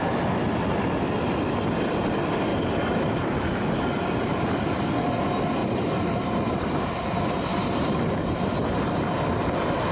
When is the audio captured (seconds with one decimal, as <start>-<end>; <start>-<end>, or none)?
0.0-2.5; 3.3-5.6; 6.9-7.5; 8.8-9.9